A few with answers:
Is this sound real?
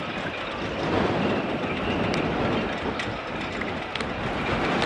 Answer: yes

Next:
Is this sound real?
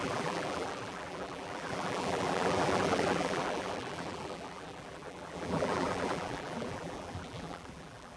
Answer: no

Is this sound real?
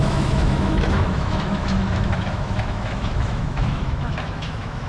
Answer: no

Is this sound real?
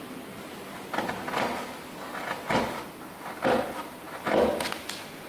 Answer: yes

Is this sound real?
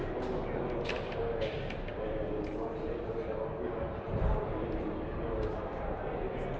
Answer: yes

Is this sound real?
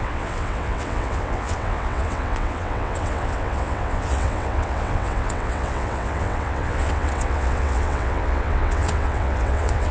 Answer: no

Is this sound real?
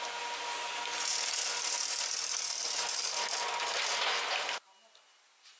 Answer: yes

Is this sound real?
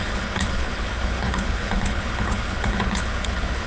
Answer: no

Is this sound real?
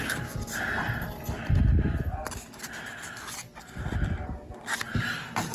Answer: yes